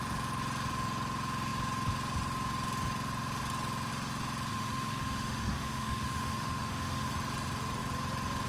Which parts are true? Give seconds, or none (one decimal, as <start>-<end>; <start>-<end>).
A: 0.0-4.5; 7.1-8.5